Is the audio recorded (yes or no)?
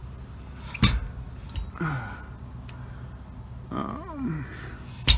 yes